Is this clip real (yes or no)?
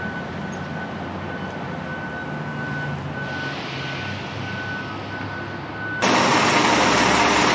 yes